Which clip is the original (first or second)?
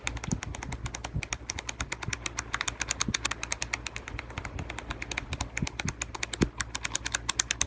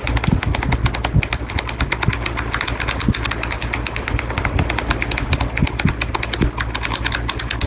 second